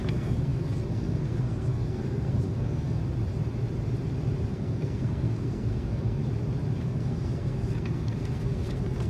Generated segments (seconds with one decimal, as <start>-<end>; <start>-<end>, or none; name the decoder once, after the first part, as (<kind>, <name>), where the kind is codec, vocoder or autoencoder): 0.0-3.0 (codec, SNAC); 4.5-6.2; 6.8-9.1

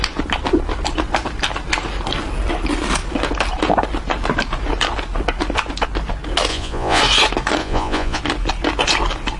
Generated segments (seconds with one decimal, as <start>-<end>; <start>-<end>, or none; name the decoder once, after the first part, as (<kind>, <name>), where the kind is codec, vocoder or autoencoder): 6.5-7.0 (vocoder, Vocos); 7.6-8.2

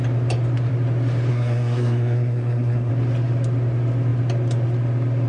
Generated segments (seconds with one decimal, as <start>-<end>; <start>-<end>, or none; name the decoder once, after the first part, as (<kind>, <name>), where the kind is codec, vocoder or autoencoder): 1.3-2.9 (codec, SNAC)

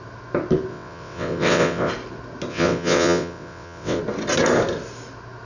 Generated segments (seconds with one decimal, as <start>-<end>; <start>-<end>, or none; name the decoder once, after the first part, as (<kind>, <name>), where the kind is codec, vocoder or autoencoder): 0.7-1.9 (vocoder, WaveNeXt); 2.5-4.0

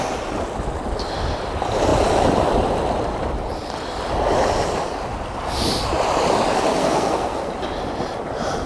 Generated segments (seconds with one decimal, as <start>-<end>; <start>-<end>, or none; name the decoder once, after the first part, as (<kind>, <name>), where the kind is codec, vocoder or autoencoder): 6.7-7.5 (codec, SNAC)

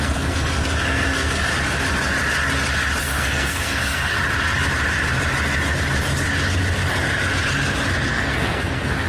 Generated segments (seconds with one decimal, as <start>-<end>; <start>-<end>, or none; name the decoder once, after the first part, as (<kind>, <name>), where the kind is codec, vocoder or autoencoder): 0.0-1.5 (codec, SNAC); 3.0-4.1; 8.1-9.1